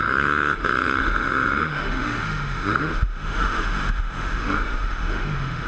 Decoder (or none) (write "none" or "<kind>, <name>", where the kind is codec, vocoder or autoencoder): autoencoder, DAC-VAE